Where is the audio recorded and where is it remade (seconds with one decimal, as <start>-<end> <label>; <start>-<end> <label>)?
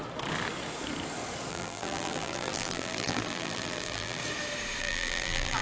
0.0-1.5 recorded; 1.5-4.2 remade; 4.2-4.8 recorded; 4.8-5.6 remade